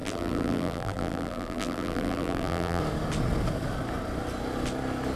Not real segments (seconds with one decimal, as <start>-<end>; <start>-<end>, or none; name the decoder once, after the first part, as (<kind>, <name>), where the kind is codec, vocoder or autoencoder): 0.0-2.8 (vocoder, BigVGAN v2)